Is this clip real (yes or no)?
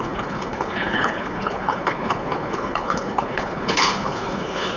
no